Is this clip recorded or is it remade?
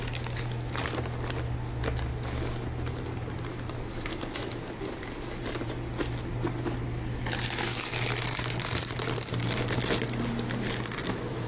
recorded